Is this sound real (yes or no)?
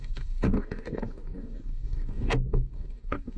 no